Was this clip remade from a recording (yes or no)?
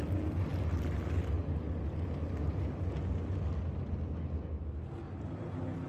no